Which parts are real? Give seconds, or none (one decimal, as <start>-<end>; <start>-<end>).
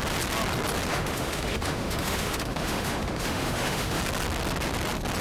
0.0-0.9; 4.0-5.2